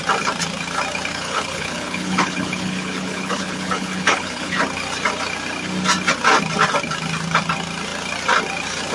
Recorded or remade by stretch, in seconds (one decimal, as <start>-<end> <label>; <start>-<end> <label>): 0.0-1.1 recorded; 1.1-4.6 remade; 4.6-8.9 recorded